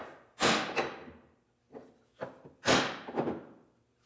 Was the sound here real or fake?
real